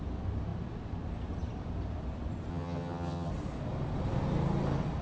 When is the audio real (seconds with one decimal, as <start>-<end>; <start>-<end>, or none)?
0.0-2.5; 3.3-5.0